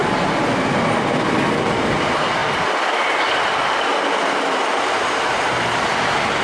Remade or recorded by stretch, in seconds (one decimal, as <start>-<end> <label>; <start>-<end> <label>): 0.0-6.4 recorded